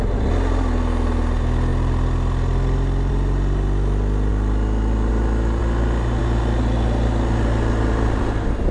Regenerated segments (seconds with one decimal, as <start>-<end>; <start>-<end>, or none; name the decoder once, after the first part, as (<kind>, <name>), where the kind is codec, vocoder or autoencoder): 1.7-3.1 (vocoder, BigVGAN v2); 4.3-5.1